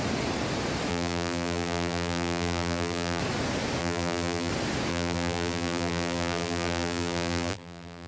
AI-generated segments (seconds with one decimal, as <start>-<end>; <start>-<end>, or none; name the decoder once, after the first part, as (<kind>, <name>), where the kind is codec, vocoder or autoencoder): 0.9-3.2 (vocoder, BigVGAN v2); 3.8-4.5; 4.9-8.1